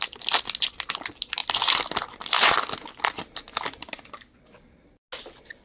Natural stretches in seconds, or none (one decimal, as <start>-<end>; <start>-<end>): 0.0-5.6